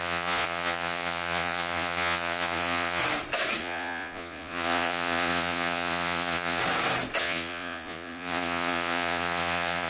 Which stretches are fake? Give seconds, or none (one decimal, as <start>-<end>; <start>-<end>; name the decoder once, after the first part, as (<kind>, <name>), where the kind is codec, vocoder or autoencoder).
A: 0.0-3.0 (vocoder, Vocos); 3.6-6.6; 7.2-9.9